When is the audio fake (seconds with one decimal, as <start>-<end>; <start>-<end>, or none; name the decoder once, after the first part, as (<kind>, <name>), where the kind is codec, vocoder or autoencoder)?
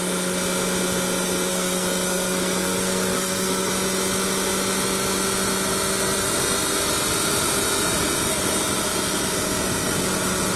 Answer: 1.5-3.7 (codec, SNAC)